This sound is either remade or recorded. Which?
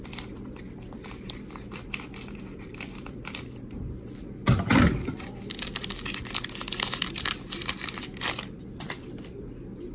remade